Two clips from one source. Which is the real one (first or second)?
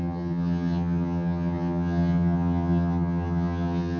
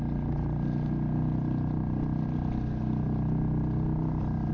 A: second